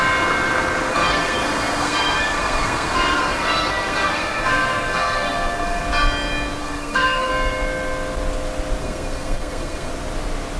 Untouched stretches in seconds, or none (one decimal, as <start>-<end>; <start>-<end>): 0.0-0.9; 5.8-6.6; 7.3-8.8; 9.9-10.6